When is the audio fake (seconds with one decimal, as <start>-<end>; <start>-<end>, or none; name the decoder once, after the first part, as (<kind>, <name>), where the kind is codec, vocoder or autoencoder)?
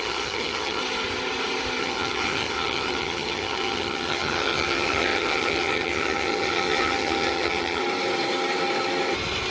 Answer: 0.0-0.8 (vocoder, HiFi-GAN); 1.8-7.8